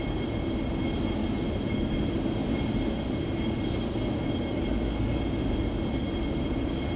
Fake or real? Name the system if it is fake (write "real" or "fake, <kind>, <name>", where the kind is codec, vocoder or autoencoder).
real